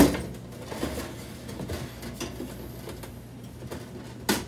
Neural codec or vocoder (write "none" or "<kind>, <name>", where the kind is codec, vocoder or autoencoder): none